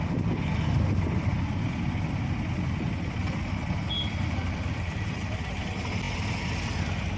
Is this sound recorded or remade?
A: recorded